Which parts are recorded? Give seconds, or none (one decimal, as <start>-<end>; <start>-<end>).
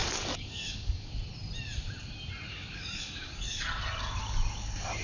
1.1-2.5; 3.6-5.0